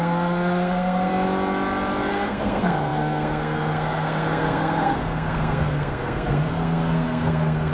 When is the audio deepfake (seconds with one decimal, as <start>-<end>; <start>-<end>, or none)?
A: 0.0-1.1; 2.1-7.7